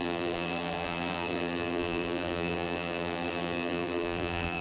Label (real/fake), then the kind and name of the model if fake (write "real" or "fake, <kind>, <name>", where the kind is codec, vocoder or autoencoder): fake, vocoder, BigVGAN v2